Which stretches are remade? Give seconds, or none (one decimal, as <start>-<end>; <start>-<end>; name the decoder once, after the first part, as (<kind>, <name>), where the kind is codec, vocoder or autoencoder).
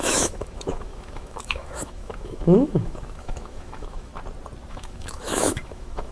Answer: 0.0-4.1 (autoencoder, DAC-VAE); 4.7-6.1